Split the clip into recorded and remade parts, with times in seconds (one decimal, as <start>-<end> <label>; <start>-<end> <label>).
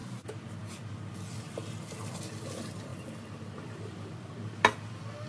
0.0-5.3 recorded